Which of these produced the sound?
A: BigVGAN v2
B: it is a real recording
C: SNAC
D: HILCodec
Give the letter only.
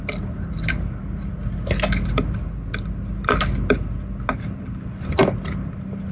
B